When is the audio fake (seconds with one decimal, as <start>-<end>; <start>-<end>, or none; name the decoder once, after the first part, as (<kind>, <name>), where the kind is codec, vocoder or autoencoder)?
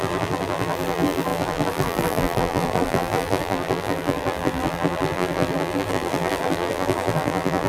0.0-7.7 (vocoder, BigVGAN v2)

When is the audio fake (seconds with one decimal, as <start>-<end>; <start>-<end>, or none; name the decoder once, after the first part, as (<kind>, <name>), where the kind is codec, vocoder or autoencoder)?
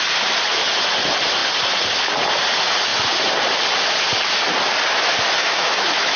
5.4-6.2 (autoencoder, DAC-VAE)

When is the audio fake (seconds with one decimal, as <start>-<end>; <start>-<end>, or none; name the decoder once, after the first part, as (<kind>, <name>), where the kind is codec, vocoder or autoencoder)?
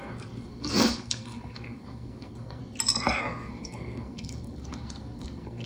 0.0-2.6 (codec, SNAC); 3.2-5.7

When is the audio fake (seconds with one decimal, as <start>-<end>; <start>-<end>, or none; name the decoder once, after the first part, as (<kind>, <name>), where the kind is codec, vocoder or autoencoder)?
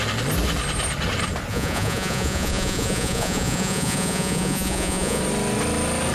1.5-5.2 (vocoder, Vocos)